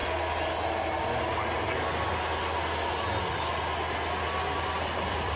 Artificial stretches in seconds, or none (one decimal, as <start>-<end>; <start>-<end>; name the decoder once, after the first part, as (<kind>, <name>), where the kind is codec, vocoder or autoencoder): none